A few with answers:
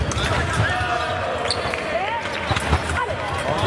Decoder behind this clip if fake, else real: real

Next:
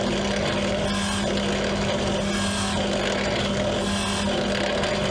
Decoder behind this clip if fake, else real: real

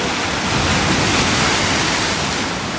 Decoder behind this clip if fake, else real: real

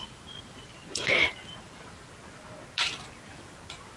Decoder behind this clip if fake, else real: real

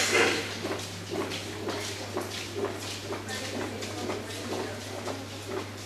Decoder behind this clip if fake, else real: real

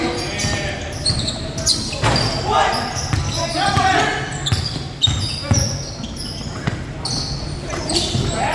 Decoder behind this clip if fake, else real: real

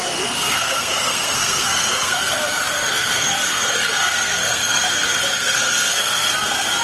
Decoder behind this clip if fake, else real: fake, codec, SNAC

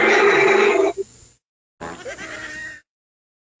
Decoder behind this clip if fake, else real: real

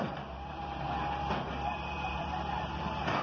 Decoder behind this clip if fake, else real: fake, vocoder, BigVGAN v2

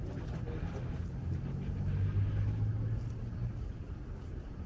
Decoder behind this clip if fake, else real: real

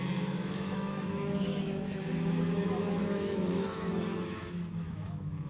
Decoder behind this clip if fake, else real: fake, autoencoder, DAC-VAE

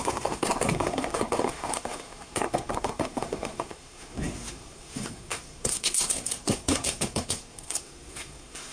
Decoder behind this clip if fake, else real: fake, codec, SNAC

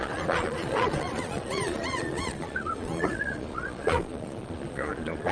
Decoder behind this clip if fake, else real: fake, vocoder, Vocos